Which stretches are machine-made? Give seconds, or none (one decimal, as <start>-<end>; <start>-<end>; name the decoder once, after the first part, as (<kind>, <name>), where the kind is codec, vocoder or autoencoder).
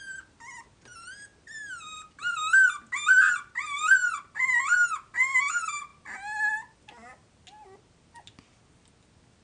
none